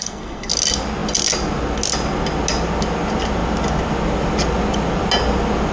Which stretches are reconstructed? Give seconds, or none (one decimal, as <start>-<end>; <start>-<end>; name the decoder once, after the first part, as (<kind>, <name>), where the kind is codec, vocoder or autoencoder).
0.0-0.5 (codec, SNAC)